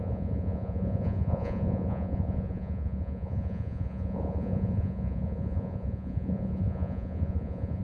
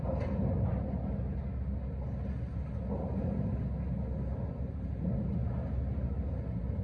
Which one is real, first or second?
second